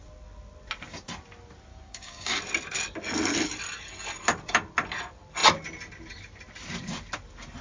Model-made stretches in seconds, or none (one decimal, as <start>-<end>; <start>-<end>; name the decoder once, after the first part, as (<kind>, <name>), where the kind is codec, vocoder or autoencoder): 1.7-2.4 (codec, DAC)